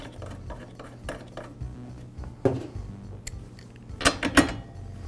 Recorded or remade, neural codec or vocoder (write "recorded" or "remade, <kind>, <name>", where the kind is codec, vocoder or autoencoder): recorded